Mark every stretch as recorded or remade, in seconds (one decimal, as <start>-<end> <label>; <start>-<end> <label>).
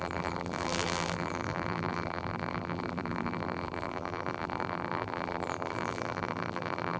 0.0-7.0 remade